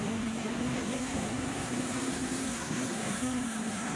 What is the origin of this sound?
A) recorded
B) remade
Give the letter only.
B